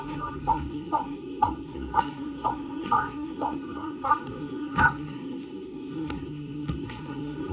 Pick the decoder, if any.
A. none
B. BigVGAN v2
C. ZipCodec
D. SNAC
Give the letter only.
D